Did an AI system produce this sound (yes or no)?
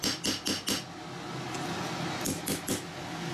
no